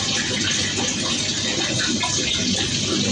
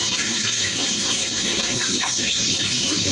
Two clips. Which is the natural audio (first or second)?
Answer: first